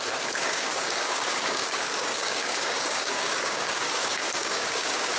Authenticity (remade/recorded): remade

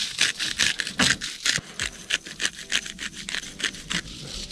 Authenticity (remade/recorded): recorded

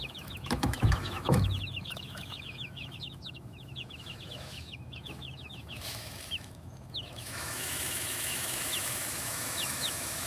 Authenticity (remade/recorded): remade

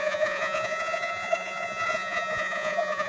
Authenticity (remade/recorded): remade